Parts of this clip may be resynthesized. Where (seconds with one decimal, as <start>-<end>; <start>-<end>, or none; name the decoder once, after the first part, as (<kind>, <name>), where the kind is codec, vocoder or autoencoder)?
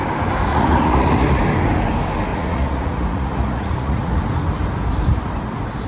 0.5-1.4 (vocoder, Vocos); 2.3-4.2